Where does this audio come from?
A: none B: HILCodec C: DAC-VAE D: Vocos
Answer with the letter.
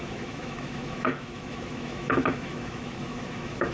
C